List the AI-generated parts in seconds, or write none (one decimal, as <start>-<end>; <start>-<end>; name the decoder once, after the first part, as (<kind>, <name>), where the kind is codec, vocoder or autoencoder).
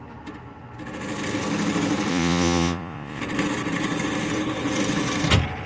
2.1-3.2 (vocoder, Vocos)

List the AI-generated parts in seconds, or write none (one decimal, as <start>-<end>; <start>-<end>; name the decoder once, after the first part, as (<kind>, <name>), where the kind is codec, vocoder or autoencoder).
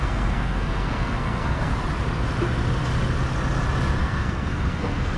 0.0-1.7 (codec, SNAC); 4.0-5.2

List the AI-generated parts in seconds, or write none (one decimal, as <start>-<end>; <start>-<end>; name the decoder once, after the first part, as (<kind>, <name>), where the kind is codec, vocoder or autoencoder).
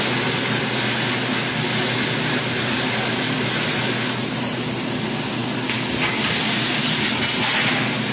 none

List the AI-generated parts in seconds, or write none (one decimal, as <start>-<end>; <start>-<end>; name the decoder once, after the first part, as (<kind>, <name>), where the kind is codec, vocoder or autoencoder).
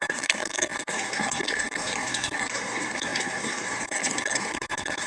0.0-5.1 (codec, SNAC)